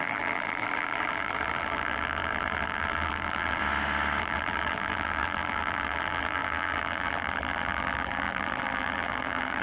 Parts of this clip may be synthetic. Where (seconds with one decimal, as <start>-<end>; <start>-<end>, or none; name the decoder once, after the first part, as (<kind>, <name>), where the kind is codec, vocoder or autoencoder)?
0.0-3.6 (vocoder, BigVGAN v2); 4.2-9.6